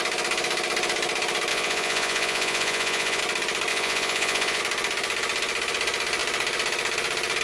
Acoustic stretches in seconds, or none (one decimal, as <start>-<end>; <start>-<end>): 0.0-1.5; 3.2-3.7; 4.6-7.4